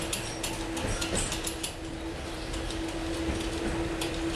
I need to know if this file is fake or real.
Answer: real